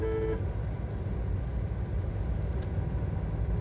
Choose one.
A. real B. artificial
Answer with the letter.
A